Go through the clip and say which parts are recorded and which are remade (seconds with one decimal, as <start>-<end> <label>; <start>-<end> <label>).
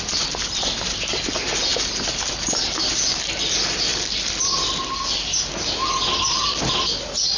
0.0-7.4 recorded